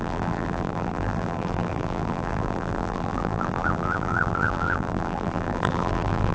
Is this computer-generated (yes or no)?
yes